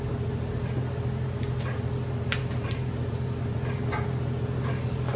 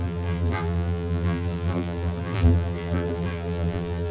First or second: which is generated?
second